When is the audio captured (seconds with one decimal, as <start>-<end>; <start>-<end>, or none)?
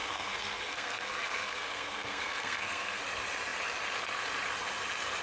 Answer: 3.0-5.2